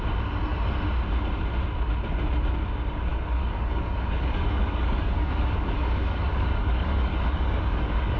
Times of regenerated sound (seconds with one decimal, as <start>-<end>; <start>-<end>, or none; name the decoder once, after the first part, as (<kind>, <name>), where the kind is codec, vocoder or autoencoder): 3.1-8.2 (codec, DAC)